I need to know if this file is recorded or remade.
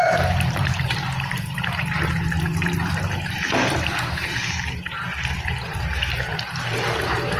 remade